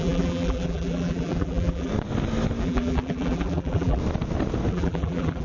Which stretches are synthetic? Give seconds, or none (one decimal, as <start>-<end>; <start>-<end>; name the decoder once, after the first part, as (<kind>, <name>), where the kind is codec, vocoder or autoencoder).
0.0-1.9 (vocoder, BigVGAN v2); 2.6-4.0; 4.7-5.4